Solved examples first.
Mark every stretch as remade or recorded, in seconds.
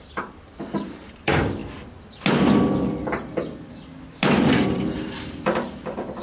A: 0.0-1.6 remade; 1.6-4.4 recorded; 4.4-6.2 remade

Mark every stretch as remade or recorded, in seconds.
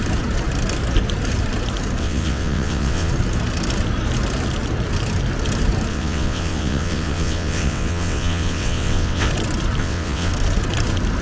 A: 0.0-2.0 recorded; 2.0-3.1 remade; 3.1-5.9 recorded; 5.9-9.3 remade; 9.3-9.8 recorded; 9.8-10.3 remade; 10.3-11.2 recorded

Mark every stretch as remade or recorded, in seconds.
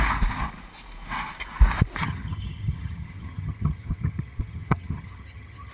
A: 0.0-2.0 recorded; 2.0-5.7 remade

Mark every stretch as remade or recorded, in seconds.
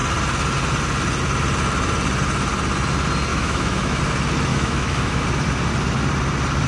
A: 0.0-3.3 recorded; 3.3-4.0 remade; 4.0-4.5 recorded; 4.5-5.2 remade; 5.2-6.7 recorded